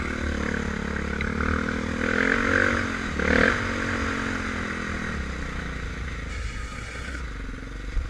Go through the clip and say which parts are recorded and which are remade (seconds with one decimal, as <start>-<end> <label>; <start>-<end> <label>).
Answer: 0.0-6.3 recorded; 6.3-7.2 remade; 7.2-8.1 recorded

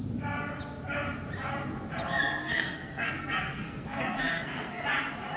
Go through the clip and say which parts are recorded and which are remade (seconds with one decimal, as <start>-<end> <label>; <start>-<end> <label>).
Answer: 0.0-2.4 recorded; 2.4-4.8 remade; 4.8-5.4 recorded

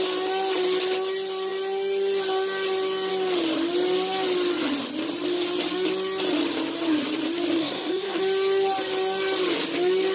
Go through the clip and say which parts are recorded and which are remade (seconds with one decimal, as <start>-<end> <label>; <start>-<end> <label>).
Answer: 0.0-7.6 recorded; 7.6-8.2 remade; 8.2-10.1 recorded

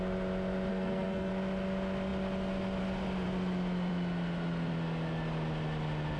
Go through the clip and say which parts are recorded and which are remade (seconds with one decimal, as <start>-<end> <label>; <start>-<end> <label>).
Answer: 0.0-0.7 recorded; 0.7-1.3 remade; 1.3-6.2 recorded

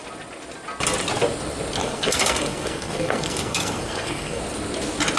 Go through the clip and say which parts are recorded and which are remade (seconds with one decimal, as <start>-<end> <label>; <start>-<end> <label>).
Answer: 0.0-1.8 recorded; 1.8-4.4 remade; 4.4-5.2 recorded

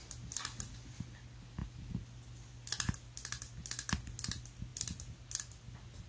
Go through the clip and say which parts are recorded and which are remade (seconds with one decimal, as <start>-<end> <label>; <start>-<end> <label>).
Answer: 0.0-6.1 recorded

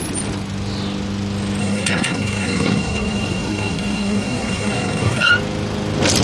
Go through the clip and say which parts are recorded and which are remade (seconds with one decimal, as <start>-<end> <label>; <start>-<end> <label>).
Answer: 0.0-1.6 recorded; 1.6-5.3 remade; 5.3-6.2 recorded

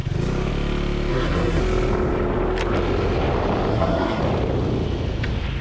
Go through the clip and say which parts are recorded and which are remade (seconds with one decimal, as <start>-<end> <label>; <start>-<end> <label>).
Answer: 0.0-1.1 recorded; 1.1-1.6 remade; 1.6-3.7 recorded; 3.7-4.2 remade; 4.2-5.6 recorded